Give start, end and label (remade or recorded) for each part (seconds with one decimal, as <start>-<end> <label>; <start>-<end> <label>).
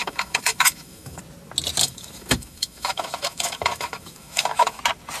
0.0-1.2 remade; 1.2-1.8 recorded; 1.8-4.8 remade; 4.8-5.2 recorded